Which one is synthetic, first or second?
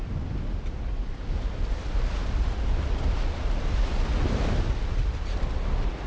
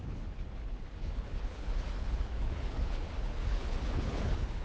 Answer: second